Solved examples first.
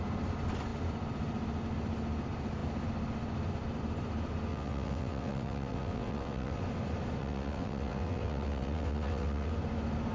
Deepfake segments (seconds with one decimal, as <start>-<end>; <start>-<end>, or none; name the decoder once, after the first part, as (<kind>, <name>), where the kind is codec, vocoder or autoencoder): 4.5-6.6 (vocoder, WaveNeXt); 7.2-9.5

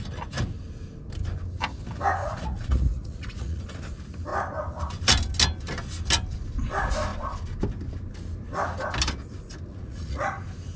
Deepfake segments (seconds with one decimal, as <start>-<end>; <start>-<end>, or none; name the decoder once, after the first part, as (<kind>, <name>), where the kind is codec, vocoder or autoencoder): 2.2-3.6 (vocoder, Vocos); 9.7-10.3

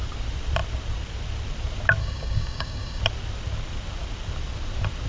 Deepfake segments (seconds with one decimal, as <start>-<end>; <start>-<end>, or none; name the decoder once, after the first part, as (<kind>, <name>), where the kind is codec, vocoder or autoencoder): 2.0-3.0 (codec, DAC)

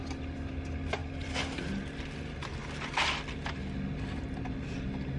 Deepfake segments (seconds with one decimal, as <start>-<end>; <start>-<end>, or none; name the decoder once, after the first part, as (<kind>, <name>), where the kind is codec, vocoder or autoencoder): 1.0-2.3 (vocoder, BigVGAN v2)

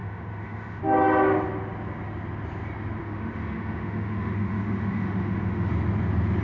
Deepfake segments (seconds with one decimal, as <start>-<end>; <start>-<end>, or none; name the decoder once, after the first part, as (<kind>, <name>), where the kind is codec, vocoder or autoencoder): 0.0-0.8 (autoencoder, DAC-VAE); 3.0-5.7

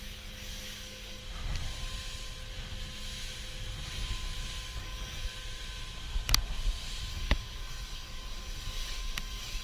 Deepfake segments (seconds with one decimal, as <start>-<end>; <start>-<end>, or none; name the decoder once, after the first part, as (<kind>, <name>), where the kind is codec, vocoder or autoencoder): 0.0-1.2 (codec, DAC); 4.8-5.3; 7.1-9.6

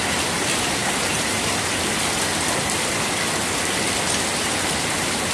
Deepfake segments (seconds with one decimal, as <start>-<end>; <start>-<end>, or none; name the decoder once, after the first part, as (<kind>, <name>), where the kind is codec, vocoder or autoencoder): 0.8-1.5 (vocoder, BigVGAN v2)

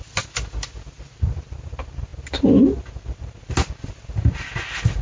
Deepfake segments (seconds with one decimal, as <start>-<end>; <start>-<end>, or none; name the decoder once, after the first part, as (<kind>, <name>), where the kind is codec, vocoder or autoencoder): none